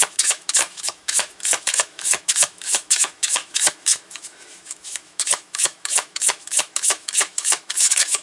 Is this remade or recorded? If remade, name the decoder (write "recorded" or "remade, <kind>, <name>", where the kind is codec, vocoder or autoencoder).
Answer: remade, autoencoder, DAC-VAE